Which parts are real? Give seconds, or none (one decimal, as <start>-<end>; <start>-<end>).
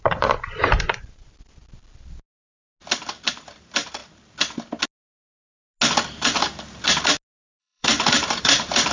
1.6-3.3; 4.0-7.6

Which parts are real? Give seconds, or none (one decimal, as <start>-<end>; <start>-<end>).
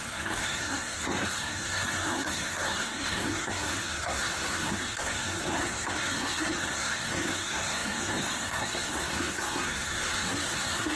none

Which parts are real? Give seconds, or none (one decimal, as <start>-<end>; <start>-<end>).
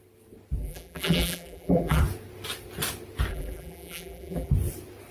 0.0-0.6; 2.0-3.3; 4.5-5.1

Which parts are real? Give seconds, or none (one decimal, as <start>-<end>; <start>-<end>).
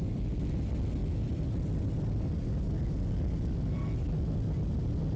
0.0-5.2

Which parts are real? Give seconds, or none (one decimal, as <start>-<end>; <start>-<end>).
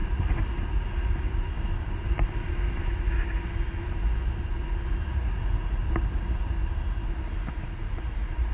0.0-5.1; 5.8-7.6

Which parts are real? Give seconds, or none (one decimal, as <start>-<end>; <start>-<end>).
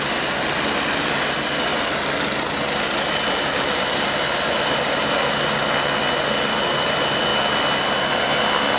0.0-8.8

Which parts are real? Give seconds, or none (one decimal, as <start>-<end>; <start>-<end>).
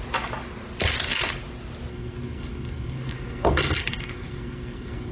0.0-1.9